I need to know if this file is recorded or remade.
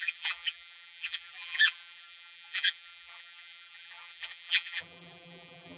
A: remade